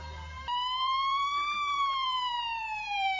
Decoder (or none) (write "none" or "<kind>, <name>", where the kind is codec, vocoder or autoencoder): vocoder, BigVGAN v2